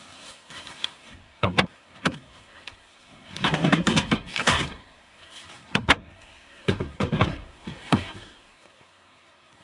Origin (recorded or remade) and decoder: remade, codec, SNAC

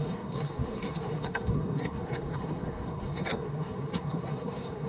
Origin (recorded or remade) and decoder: remade, codec, SNAC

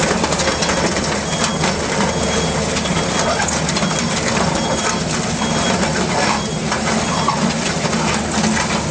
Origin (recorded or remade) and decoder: recorded